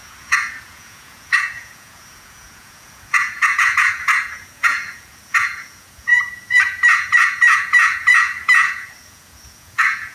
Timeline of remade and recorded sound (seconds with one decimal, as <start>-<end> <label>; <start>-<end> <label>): 0.0-10.1 remade